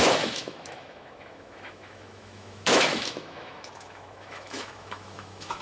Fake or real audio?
fake